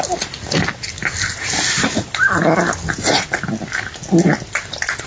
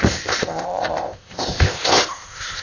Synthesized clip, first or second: second